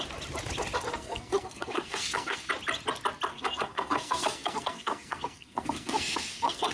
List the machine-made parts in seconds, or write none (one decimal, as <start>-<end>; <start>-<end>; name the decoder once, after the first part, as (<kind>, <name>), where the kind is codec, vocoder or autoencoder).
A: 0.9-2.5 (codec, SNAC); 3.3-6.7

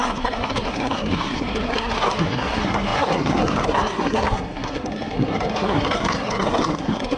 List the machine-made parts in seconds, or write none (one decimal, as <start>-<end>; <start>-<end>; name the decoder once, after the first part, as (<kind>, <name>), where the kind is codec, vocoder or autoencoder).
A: 0.0-7.2 (codec, SNAC)

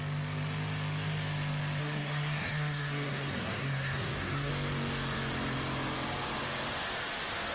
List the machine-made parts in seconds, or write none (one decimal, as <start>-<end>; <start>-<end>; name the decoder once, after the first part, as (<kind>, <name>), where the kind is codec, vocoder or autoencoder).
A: 1.8-4.5 (codec, SNAC)